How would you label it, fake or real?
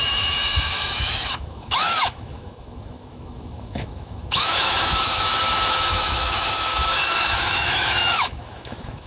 fake